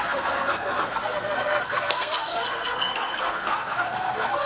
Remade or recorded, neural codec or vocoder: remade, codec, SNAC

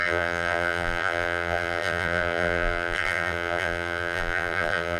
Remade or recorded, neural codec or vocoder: remade, vocoder, BigVGAN v2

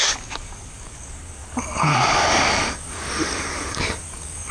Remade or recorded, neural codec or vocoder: remade, codec, DAC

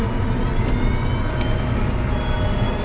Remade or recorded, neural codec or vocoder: recorded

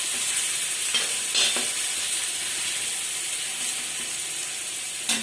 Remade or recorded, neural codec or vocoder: recorded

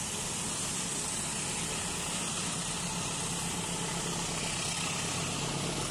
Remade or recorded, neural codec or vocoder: recorded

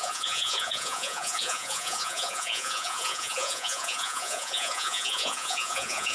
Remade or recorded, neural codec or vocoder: remade, vocoder, Vocos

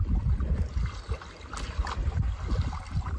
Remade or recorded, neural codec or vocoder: recorded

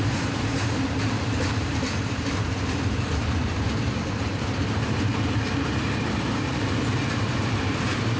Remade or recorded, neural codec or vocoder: remade, vocoder, BigVGAN v2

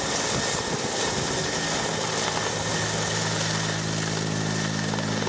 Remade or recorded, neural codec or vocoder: recorded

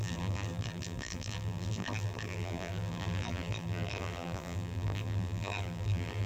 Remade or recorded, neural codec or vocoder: remade, vocoder, BigVGAN v2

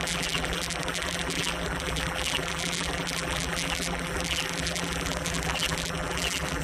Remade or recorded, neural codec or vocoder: remade, vocoder, BigVGAN v2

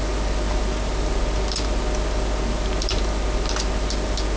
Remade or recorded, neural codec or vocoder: recorded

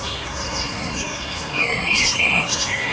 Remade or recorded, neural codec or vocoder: remade, codec, SNAC